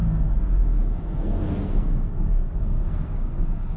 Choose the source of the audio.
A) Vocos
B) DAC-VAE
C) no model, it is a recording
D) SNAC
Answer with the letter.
D